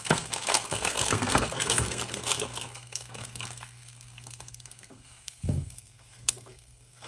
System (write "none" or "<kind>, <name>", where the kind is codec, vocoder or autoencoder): codec, SNAC